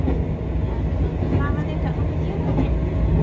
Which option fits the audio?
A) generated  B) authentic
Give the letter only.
B